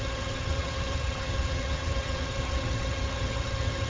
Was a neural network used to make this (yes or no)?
yes